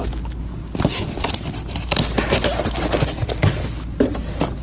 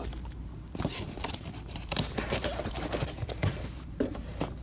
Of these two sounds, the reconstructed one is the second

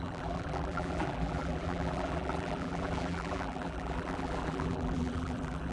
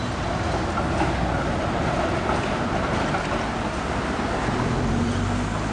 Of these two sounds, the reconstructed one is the first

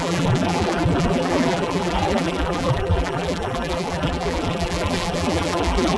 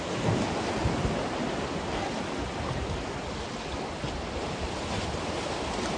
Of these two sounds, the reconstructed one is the first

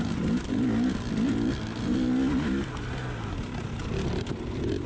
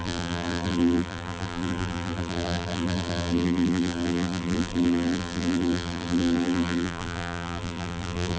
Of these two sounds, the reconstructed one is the second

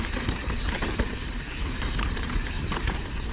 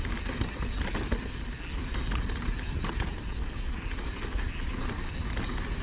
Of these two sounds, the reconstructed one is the first